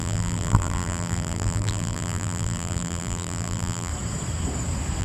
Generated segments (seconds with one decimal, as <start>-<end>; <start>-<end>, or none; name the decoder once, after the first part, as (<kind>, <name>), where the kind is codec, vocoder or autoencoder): 0.0-3.9 (vocoder, BigVGAN v2)